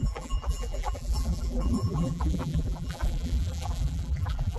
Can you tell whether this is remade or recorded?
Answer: remade